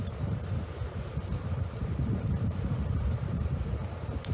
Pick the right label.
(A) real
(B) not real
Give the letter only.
B